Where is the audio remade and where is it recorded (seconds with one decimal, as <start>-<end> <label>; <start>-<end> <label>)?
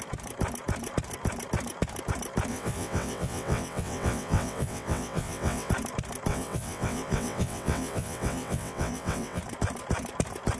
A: 0.0-2.5 recorded; 2.5-5.7 remade; 5.7-6.3 recorded; 6.3-9.4 remade; 9.4-10.6 recorded